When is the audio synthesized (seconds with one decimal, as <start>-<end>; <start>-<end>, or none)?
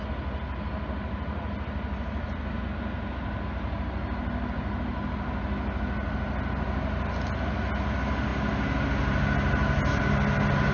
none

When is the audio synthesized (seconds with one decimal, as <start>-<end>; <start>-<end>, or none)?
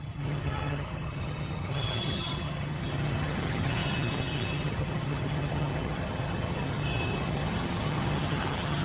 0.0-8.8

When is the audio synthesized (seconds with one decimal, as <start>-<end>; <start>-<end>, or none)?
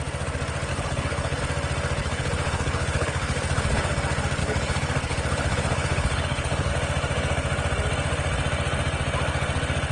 0.7-1.4; 2.0-3.9; 4.4-6.7